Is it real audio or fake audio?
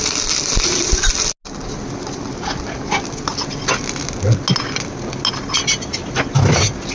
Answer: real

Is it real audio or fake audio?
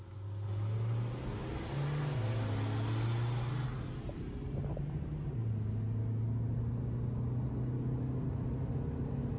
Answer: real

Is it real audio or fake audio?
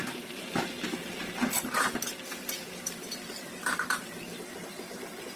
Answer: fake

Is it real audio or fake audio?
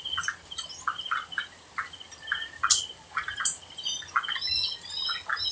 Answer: real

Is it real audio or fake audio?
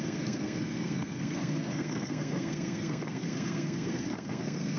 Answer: fake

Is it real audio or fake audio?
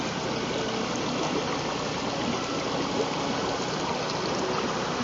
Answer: real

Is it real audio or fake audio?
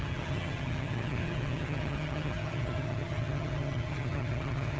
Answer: fake